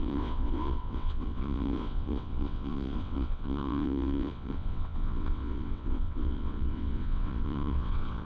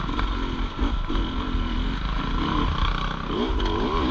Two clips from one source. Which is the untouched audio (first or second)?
second